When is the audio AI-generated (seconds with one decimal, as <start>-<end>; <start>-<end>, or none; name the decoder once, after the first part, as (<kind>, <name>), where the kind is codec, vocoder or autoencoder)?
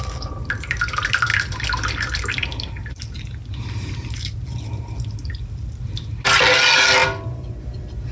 none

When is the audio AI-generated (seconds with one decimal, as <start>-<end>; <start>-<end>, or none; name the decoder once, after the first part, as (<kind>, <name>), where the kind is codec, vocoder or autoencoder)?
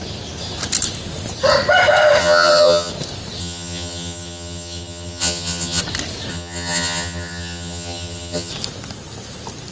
2.2-2.9 (vocoder, HiFi-GAN); 3.4-5.8; 6.3-8.5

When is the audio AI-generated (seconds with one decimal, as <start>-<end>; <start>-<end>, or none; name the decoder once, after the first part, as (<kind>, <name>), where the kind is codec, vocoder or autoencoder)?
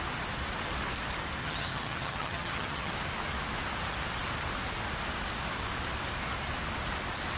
1.4-2.9 (vocoder, HiFi-GAN)